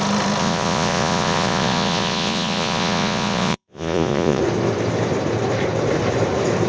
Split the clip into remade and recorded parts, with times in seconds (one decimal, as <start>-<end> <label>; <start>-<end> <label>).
0.0-0.4 recorded; 0.4-4.4 remade; 4.4-6.7 recorded